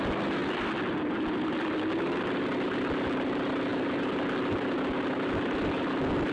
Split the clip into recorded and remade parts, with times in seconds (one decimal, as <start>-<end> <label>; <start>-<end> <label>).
0.0-0.4 recorded; 0.4-0.9 remade; 0.9-6.3 recorded

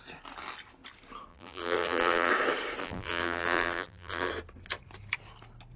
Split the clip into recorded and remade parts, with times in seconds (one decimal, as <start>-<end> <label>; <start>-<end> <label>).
0.0-1.3 recorded; 1.3-2.3 remade; 2.3-2.8 recorded; 2.8-4.3 remade; 4.3-5.8 recorded

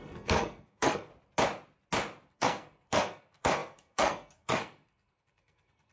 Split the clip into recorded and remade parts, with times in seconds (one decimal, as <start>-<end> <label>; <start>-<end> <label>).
0.0-1.1 remade; 1.1-2.3 recorded; 2.3-5.9 remade

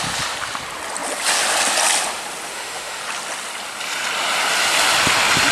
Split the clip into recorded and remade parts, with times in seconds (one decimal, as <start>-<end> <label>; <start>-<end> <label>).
0.0-2.5 recorded; 2.5-3.0 remade; 3.0-5.5 recorded

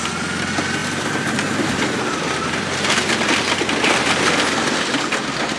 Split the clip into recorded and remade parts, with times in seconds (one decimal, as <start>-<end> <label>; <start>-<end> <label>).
0.0-0.8 recorded; 0.8-4.2 remade; 4.2-5.6 recorded

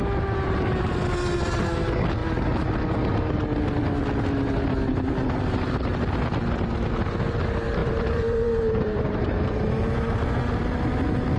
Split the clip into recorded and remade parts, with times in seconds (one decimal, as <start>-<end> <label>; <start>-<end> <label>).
0.0-7.8 recorded; 7.8-9.7 remade; 9.7-11.4 recorded

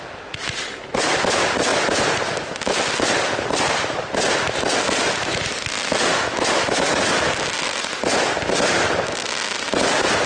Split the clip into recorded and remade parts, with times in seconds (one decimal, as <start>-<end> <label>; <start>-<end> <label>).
0.0-6.1 recorded; 6.1-7.0 remade; 7.0-10.3 recorded

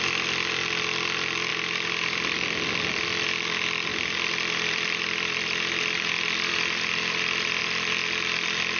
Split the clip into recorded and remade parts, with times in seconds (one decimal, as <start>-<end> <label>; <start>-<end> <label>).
0.0-1.5 recorded; 1.5-2.7 remade; 2.7-3.9 recorded; 3.9-7.6 remade; 7.6-8.8 recorded